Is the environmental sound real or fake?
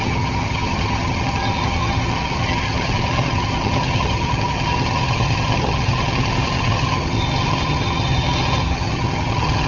fake